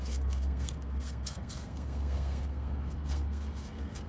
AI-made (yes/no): yes